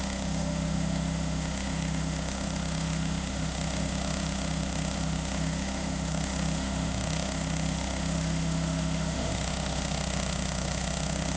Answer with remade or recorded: remade